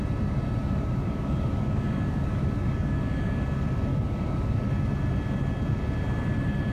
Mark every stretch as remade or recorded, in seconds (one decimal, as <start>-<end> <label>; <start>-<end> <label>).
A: 0.0-0.6 recorded; 0.6-3.4 remade; 3.4-3.9 recorded; 3.9-4.7 remade; 4.7-6.7 recorded